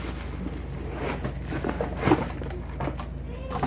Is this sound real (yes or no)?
yes